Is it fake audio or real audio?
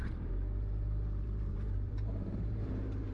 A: fake